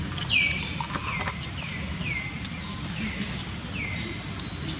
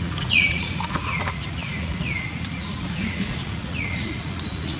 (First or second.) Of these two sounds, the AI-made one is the second